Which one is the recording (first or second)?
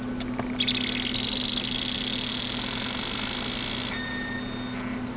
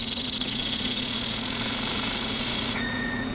first